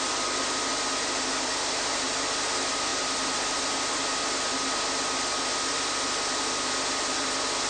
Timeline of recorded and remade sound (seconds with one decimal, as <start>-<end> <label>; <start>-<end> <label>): 0.0-7.7 recorded